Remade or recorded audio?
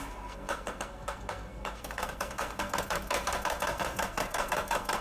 remade